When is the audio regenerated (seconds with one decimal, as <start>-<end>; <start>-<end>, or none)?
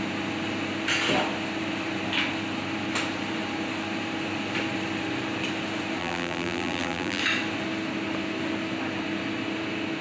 6.0-7.2